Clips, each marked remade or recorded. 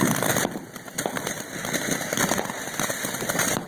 recorded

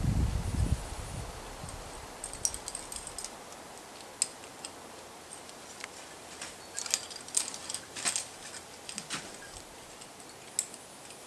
recorded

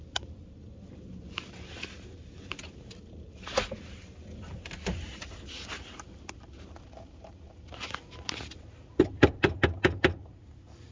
recorded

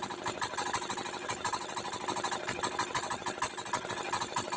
recorded